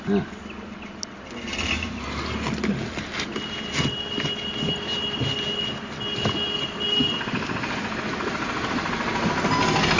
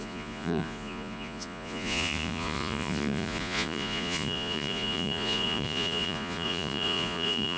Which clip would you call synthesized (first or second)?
second